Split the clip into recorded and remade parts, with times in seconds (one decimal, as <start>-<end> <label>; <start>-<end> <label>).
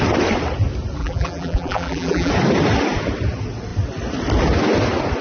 0.0-1.0 recorded; 1.0-2.3 remade; 2.3-5.2 recorded